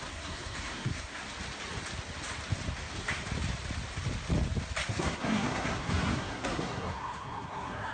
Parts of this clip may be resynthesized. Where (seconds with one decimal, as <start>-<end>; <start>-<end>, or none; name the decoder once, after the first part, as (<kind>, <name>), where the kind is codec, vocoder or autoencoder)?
0.0-1.2 (codec, SNAC); 4.9-7.9